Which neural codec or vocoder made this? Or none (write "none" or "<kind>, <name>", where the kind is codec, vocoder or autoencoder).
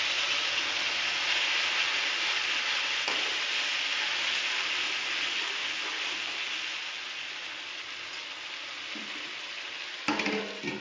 none